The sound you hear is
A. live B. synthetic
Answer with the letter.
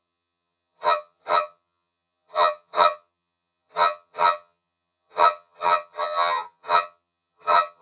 B